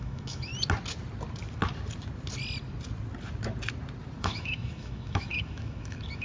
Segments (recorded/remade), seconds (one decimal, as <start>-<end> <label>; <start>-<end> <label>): 0.0-0.5 remade; 0.5-4.2 recorded; 4.2-6.2 remade